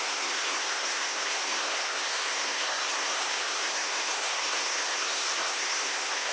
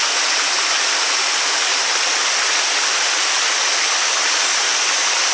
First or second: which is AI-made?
first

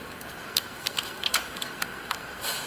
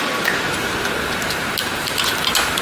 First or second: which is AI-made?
first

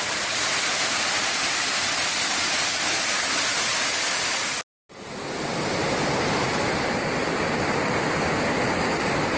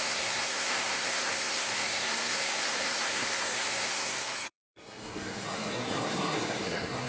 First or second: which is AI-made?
second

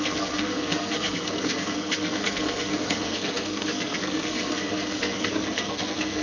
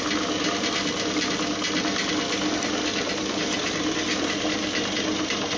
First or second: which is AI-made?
first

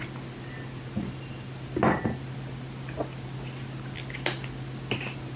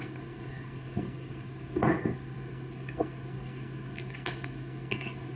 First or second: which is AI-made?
second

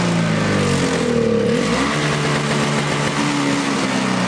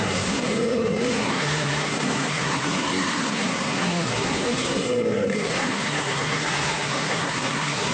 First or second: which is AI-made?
second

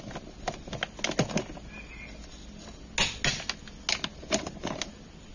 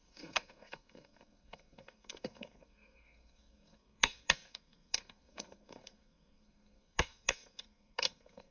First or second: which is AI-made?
second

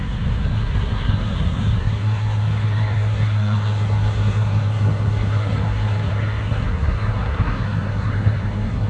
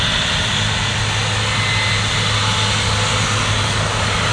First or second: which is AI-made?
first